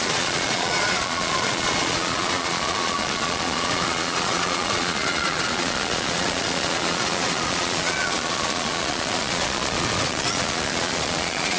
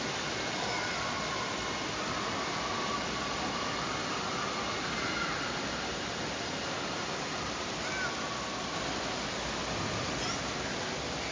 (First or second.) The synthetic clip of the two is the first